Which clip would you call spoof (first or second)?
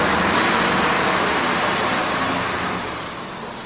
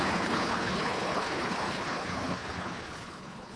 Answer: second